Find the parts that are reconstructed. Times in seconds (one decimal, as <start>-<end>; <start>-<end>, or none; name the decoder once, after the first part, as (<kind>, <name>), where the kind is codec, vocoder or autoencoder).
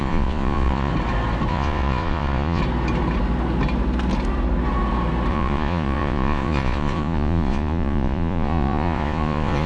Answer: 0.0-0.9 (vocoder, Vocos); 1.5-2.6; 5.3-9.7